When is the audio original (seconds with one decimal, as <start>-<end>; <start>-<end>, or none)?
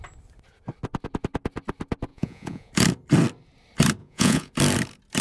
0.0-2.1; 2.7-4.0; 4.5-5.2